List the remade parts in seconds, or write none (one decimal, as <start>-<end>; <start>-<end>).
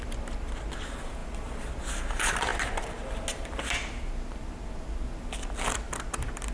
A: none